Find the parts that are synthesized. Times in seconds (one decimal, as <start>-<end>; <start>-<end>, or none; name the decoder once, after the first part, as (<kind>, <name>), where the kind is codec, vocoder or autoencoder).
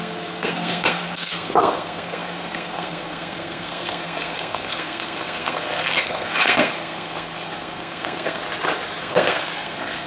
0.0-8.4 (codec, SNAC); 9.0-10.1